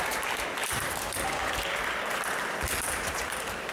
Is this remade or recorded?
recorded